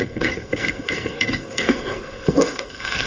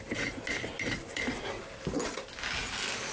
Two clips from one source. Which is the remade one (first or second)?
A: first